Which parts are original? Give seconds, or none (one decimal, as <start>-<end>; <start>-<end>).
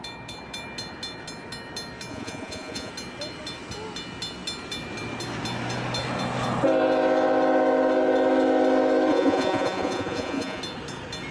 0.0-2.1; 2.9-9.1; 10.6-11.3